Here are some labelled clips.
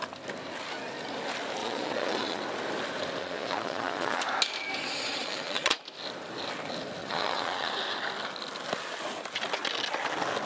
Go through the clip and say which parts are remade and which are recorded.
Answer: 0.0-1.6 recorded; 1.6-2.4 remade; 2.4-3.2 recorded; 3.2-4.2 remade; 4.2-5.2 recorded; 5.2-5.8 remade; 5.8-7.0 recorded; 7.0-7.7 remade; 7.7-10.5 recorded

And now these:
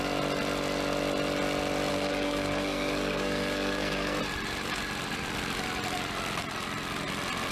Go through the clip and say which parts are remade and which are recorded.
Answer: 0.0-1.9 recorded; 1.9-4.2 remade; 4.2-7.5 recorded

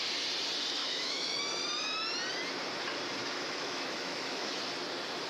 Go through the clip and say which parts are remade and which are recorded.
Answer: 0.0-0.8 recorded; 0.8-1.4 remade; 1.4-3.2 recorded; 3.2-4.6 remade; 4.6-5.3 recorded

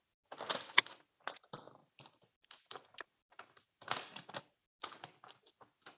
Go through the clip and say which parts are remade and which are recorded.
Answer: 0.0-1.8 recorded; 1.8-4.4 remade; 4.4-6.0 recorded

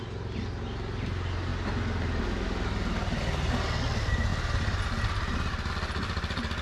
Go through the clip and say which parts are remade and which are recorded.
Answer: 0.0-6.6 recorded